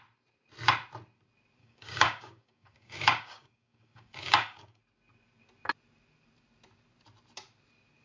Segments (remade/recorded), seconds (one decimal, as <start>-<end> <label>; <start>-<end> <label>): 0.0-1.6 recorded; 1.6-4.8 remade; 4.8-8.0 recorded